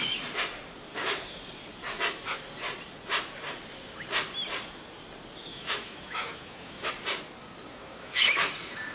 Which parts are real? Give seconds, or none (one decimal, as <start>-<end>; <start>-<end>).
0.0-0.9; 1.4-5.5; 6.9-7.7; 8.5-8.9